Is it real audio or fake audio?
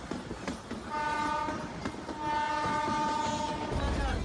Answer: real